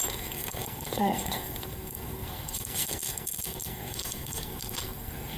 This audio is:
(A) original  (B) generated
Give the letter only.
B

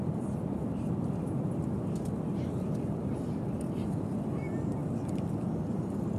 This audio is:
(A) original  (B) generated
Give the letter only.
A